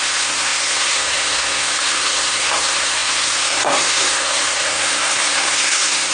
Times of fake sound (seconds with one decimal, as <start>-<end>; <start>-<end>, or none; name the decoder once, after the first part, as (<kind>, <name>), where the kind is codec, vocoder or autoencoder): 0.0-6.1 (codec, SNAC)